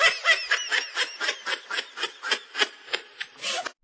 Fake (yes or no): no